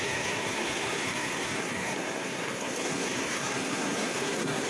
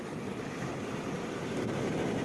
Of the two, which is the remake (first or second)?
first